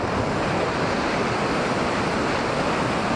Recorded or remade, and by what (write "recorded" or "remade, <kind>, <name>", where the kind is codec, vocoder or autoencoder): recorded